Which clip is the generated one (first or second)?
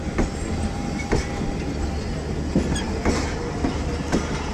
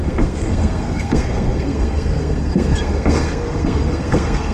second